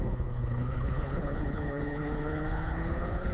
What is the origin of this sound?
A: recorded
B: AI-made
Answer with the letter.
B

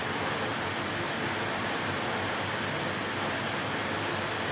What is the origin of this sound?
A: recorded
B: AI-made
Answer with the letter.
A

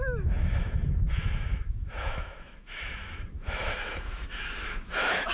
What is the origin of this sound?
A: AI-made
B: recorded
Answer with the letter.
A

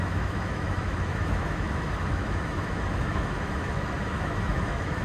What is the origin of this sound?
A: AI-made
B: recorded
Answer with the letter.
A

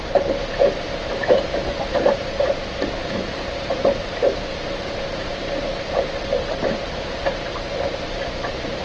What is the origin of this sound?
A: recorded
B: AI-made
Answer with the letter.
B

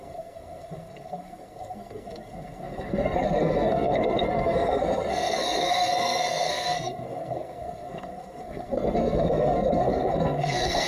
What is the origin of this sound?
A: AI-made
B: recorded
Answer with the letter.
A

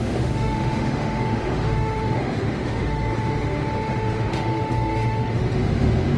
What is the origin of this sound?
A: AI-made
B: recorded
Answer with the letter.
A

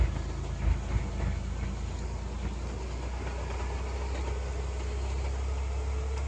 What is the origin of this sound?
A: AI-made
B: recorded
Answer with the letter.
B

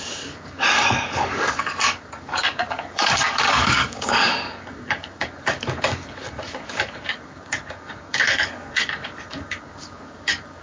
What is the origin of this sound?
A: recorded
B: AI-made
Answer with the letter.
B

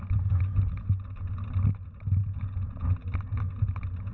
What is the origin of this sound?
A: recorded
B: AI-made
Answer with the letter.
A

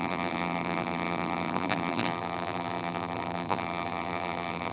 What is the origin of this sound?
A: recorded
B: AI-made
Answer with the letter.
B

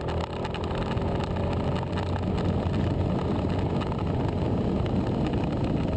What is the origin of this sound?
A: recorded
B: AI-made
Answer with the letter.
A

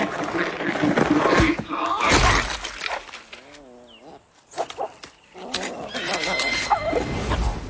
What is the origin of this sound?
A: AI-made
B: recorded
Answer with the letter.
B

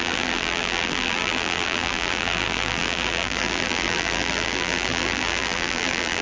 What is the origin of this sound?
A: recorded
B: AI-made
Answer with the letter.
B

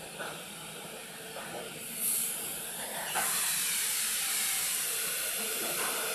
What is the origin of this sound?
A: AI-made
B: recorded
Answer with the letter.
A